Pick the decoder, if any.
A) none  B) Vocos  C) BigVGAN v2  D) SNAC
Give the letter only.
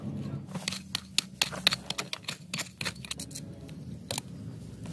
A